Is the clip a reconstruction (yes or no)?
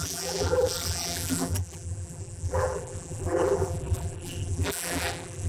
yes